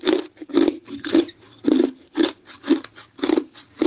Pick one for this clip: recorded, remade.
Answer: recorded